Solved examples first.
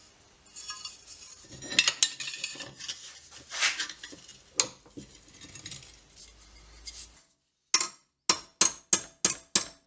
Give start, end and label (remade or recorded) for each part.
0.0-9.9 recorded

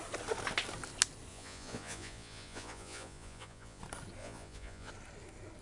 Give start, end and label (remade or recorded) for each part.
0.0-1.3 recorded; 1.3-3.8 remade; 3.8-4.2 recorded; 4.2-4.9 remade; 4.9-5.6 recorded

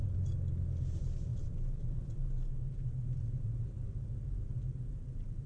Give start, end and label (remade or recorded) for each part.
0.0-1.3 recorded; 1.3-4.6 remade; 4.6-5.5 recorded